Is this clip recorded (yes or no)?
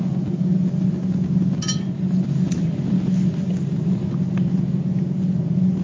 yes